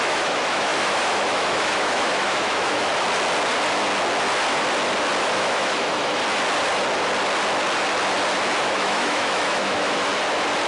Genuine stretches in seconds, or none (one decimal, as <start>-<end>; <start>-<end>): 2.9-5.2; 6.2-8.6; 10.1-10.7

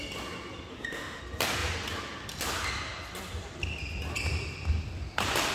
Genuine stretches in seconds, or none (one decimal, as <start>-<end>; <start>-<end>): 0.0-0.7; 1.2-5.5

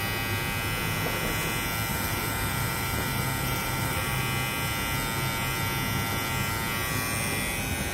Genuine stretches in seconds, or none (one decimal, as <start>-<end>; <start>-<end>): 0.0-1.9; 4.2-7.9

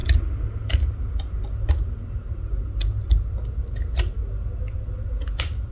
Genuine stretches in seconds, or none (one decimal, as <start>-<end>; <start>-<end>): 0.0-5.7

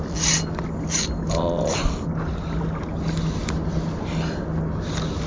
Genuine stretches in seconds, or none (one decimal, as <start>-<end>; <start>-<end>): 0.0-5.3

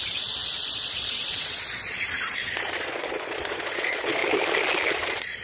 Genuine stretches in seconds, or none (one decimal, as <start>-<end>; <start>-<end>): 4.2-4.9

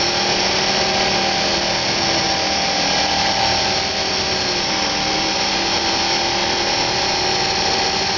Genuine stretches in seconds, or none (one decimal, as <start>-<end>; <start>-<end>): 0.0-8.2

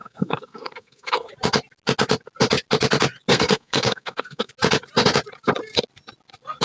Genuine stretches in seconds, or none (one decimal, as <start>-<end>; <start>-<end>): 1.3-3.3; 4.5-6.6